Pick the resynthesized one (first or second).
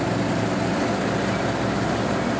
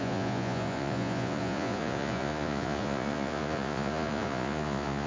second